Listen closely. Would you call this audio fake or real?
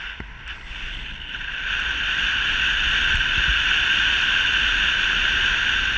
real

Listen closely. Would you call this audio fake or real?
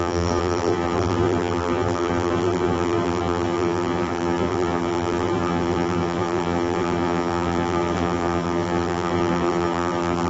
fake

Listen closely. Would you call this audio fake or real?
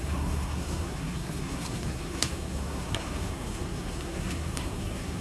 fake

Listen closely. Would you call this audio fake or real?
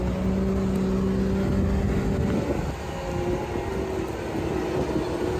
real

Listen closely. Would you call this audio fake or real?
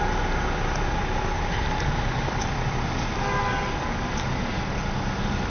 real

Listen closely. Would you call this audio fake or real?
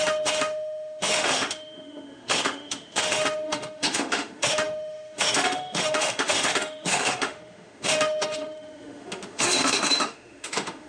fake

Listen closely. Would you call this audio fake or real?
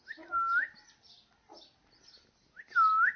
real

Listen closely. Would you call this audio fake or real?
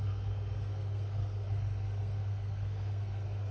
fake